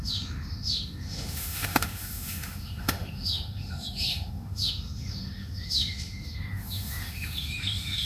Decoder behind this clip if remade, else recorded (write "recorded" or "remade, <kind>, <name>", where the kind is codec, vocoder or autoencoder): remade, autoencoder, DAC-VAE